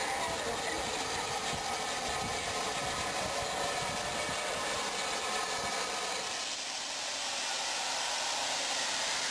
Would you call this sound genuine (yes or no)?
yes